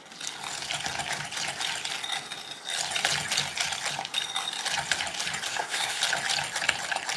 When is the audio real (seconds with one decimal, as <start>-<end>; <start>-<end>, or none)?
0.0-5.5; 6.0-7.2